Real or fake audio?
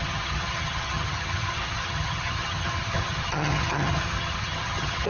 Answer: fake